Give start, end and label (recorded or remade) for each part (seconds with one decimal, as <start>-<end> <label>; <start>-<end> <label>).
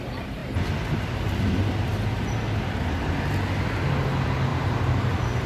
0.0-4.5 recorded; 4.5-5.5 remade